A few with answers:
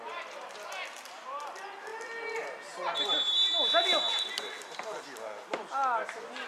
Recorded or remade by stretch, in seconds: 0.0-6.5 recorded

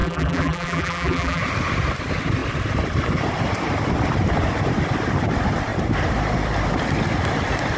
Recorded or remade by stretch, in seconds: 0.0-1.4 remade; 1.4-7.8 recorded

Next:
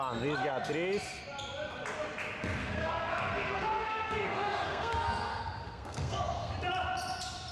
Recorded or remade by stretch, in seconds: 0.0-2.6 recorded; 2.6-6.5 remade; 6.5-7.5 recorded

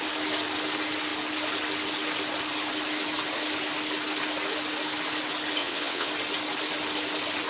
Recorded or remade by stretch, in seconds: 0.0-5.6 recorded; 5.6-6.1 remade; 6.1-7.5 recorded

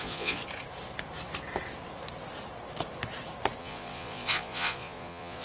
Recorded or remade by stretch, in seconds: 0.0-0.4 remade; 0.4-3.6 recorded; 3.6-5.4 remade